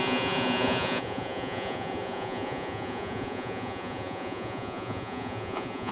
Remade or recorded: remade